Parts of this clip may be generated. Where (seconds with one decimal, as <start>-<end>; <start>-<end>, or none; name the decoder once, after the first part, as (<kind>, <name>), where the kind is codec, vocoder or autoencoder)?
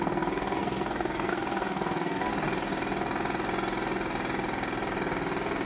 0.0-2.3 (codec, SNAC)